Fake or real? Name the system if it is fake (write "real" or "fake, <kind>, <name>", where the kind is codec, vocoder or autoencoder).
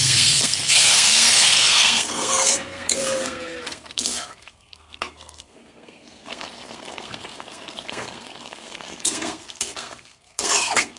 fake, codec, SNAC